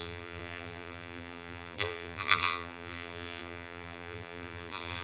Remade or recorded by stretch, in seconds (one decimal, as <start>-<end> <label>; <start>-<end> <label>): 0.0-5.0 remade